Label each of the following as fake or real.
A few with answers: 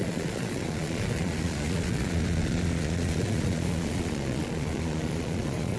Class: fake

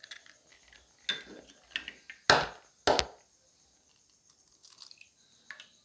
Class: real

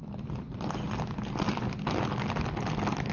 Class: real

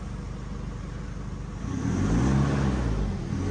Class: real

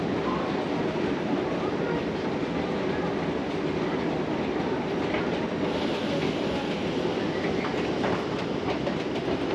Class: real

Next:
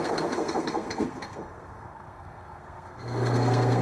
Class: fake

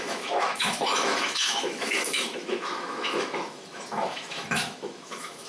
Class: fake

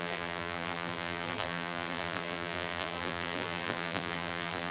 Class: fake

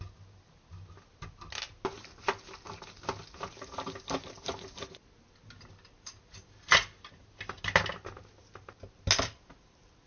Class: real